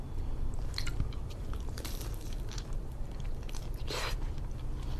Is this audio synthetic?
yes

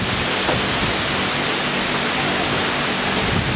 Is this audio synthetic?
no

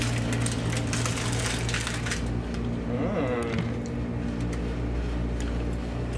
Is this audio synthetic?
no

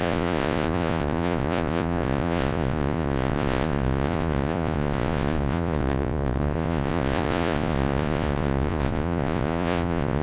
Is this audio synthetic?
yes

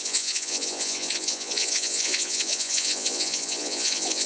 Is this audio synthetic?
yes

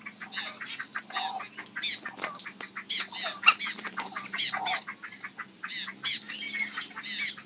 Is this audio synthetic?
no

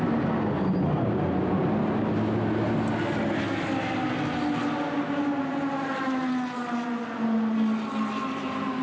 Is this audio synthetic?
no